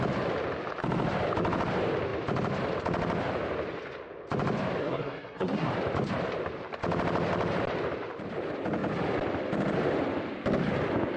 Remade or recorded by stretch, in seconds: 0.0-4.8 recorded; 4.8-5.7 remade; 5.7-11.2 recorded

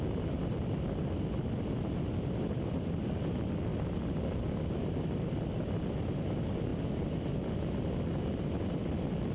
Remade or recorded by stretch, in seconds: 0.0-9.3 recorded

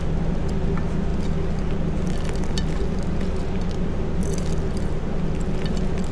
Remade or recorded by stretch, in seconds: 0.0-6.1 recorded

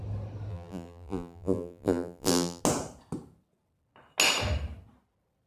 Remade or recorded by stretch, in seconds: 0.0-0.5 recorded; 0.5-2.6 remade; 2.6-5.5 recorded

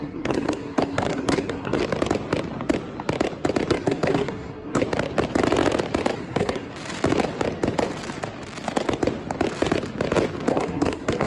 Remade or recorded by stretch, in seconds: 0.0-1.8 remade; 1.8-3.7 recorded; 3.7-4.8 remade; 4.8-6.2 recorded; 6.2-6.7 remade; 6.7-10.5 recorded; 10.5-11.3 remade

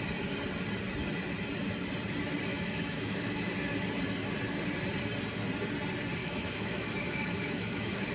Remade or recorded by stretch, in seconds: 0.0-2.5 recorded; 2.5-3.5 remade; 3.5-6.2 recorded; 6.2-8.1 remade

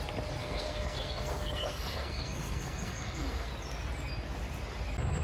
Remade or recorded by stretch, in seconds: 0.0-0.4 recorded; 0.4-3.5 remade; 3.5-5.2 recorded